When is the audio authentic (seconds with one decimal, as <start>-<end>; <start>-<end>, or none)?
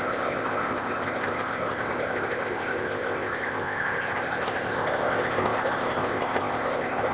none